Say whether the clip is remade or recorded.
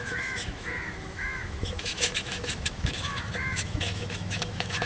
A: remade